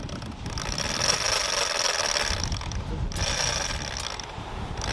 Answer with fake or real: real